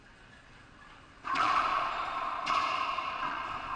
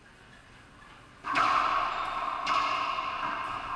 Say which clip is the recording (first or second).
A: second